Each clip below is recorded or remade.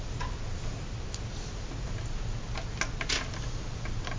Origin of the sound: recorded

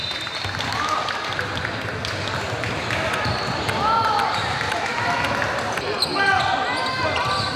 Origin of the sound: recorded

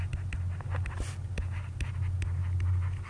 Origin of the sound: recorded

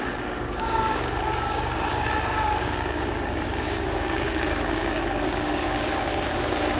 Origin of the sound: remade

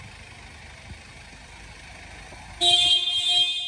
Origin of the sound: recorded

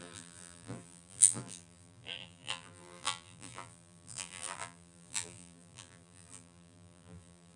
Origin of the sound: remade